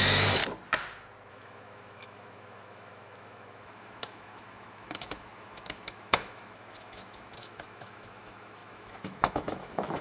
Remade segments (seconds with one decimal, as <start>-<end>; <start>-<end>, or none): 0.0-0.4; 1.3-10.0

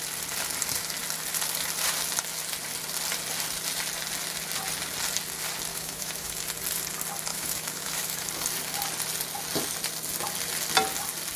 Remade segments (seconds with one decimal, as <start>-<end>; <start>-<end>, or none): 5.7-6.4; 7.3-8.2

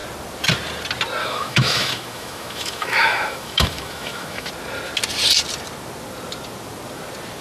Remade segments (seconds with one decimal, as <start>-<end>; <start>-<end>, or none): 1.2-4.5

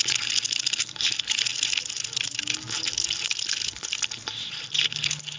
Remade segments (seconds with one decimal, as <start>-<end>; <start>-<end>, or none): none

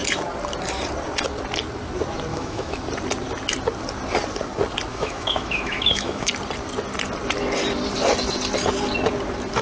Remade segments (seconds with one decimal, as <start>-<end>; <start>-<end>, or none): 2.3-2.8; 4.9-6.3

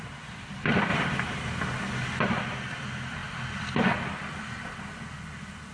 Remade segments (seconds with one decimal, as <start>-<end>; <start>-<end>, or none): none

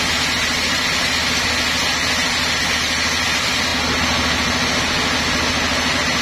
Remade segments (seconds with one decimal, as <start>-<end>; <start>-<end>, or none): none